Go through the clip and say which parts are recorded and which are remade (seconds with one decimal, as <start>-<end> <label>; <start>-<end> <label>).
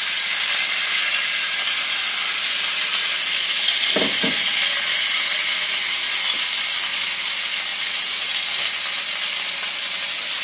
0.0-5.3 recorded; 5.3-6.1 remade; 6.1-7.7 recorded; 7.7-8.3 remade; 8.3-10.4 recorded